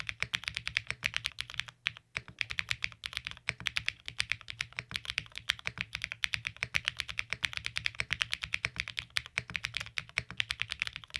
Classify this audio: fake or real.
real